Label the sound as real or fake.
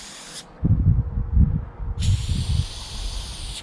real